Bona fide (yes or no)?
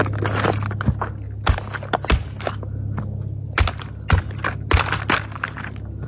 yes